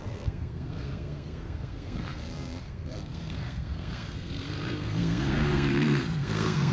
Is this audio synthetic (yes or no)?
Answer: yes